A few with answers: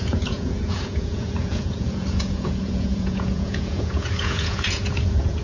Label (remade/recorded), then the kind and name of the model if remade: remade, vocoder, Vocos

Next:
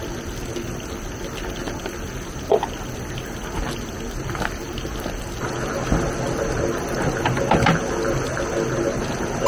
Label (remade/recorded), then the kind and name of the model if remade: recorded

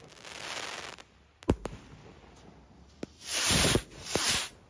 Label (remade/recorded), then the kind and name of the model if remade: recorded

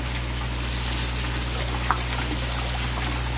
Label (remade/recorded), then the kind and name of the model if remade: recorded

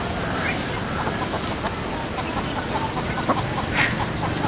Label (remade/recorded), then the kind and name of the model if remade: recorded